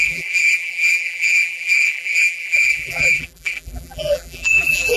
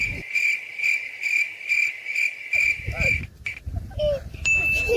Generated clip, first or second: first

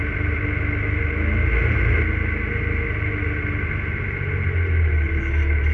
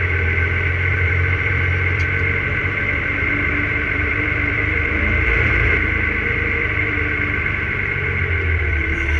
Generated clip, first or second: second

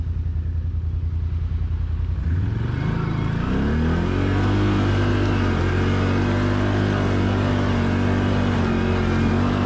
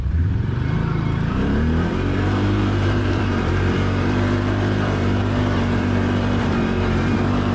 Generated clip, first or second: second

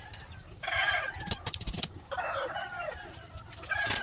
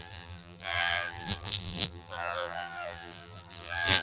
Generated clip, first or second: second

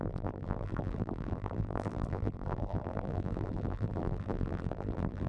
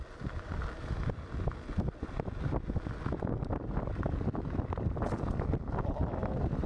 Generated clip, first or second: first